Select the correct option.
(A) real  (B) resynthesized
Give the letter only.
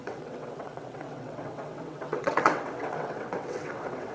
B